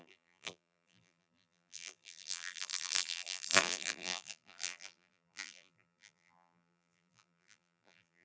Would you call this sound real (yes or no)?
no